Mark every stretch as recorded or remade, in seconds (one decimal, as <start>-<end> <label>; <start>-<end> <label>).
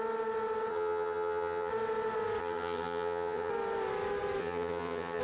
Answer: 0.0-0.7 recorded; 0.7-1.7 remade; 1.7-2.4 recorded; 2.4-3.5 remade; 3.5-4.4 recorded; 4.4-5.2 remade